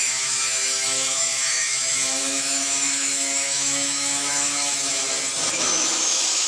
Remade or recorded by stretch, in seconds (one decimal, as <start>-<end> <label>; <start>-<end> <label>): 0.0-5.0 remade; 5.0-5.5 recorded; 5.5-6.5 remade